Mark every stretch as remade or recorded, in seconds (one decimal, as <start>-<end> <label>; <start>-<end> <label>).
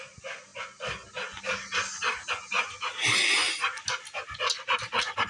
0.0-5.3 recorded